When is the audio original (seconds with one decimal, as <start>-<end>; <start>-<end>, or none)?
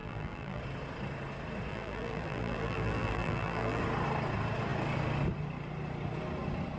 0.6-1.7; 3.8-6.8